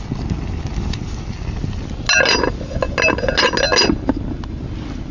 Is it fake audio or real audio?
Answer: real